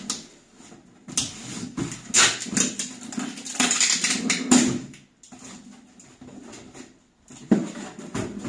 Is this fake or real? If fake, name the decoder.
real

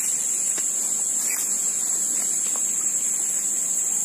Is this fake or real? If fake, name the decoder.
real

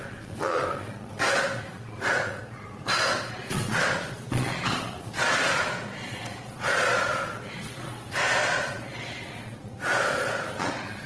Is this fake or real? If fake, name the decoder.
fake, vocoder, Vocos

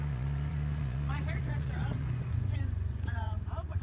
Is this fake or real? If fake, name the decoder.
fake, vocoder, Vocos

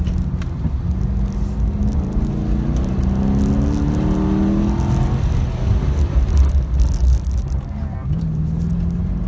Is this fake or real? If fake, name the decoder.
real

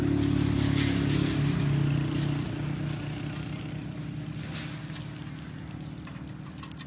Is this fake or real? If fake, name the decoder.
real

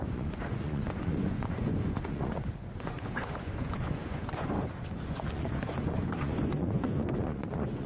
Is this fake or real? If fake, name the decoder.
fake, vocoder, Vocos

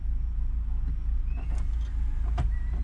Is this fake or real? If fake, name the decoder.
real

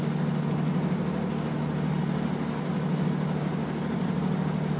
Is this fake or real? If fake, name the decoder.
real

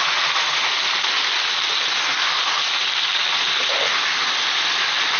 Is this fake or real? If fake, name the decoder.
real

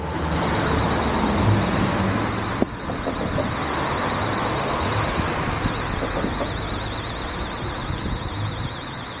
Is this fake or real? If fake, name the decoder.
real